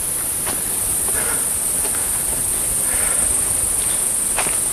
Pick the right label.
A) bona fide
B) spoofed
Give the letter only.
A